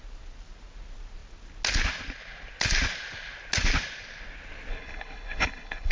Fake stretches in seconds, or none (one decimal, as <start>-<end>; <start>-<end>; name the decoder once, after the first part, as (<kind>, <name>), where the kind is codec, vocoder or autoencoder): 4.7-5.9 (codec, HILCodec)